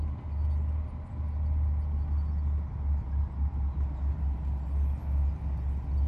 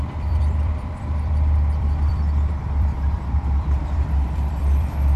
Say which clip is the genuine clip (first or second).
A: first